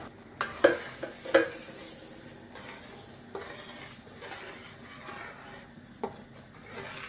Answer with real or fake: real